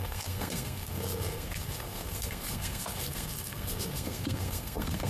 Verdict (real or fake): fake